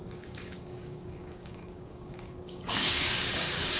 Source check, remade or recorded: remade